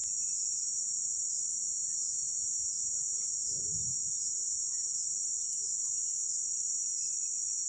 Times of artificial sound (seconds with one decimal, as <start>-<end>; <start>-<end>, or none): 1.0-1.6; 6.2-7.7